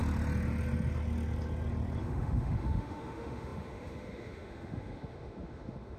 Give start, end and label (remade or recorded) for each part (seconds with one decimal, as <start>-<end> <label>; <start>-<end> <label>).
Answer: 0.0-2.0 recorded; 2.0-6.0 remade